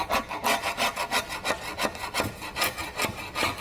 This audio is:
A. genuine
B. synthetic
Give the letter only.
A